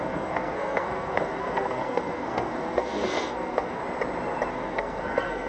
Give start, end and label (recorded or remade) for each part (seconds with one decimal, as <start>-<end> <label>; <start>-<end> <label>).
0.0-3.8 remade; 3.8-4.5 recorded; 4.5-5.5 remade